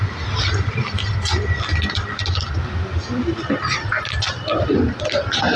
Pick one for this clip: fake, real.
real